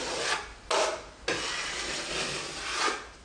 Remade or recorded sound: recorded